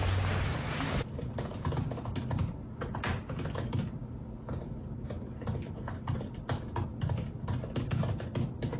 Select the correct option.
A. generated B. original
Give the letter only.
B